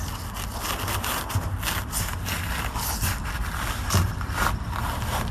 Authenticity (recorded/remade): recorded